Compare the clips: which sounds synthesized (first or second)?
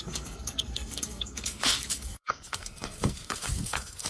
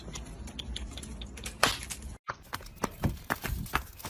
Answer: first